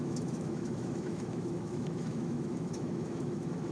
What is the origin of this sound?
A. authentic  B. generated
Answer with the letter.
B